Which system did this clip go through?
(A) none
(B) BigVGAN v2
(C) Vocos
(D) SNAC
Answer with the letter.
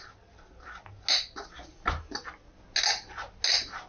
A